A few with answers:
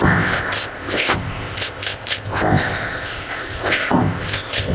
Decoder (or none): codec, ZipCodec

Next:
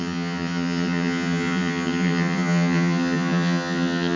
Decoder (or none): vocoder, HiFi-GAN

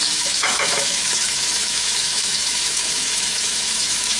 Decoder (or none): autoencoder, DAC-VAE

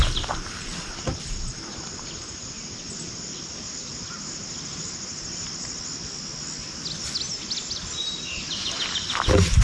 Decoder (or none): none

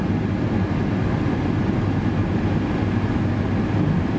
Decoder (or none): none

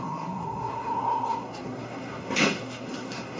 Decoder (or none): codec, SNAC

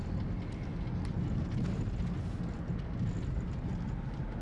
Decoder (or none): none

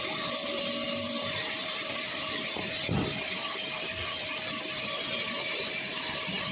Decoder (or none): none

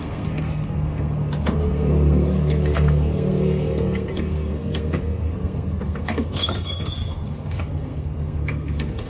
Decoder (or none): codec, SNAC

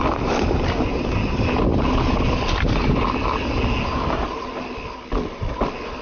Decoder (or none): none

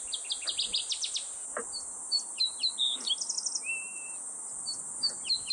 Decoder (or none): none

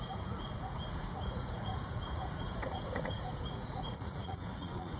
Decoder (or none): vocoder, Vocos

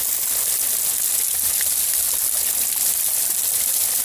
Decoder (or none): none